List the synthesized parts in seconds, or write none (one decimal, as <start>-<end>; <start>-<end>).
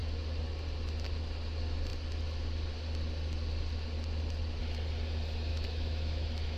5.5-6.6